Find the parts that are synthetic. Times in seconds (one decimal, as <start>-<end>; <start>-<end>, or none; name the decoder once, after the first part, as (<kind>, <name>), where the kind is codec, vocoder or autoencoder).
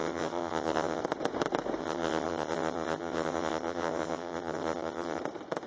0.0-1.0 (vocoder, HiFi-GAN); 1.8-5.2